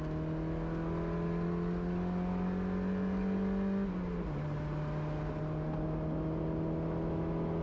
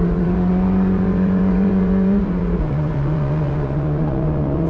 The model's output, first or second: second